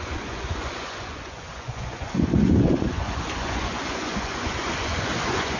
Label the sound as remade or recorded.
remade